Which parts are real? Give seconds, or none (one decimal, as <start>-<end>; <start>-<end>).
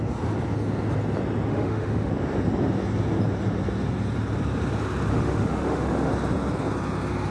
0.0-1.5; 2.1-5.1; 6.1-7.3